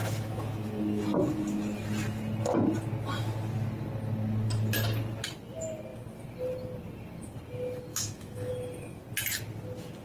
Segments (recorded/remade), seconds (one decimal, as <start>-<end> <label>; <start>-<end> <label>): 0.0-1.0 remade; 1.0-7.9 recorded; 7.9-8.5 remade; 8.5-10.0 recorded